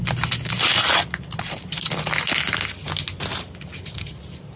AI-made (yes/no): no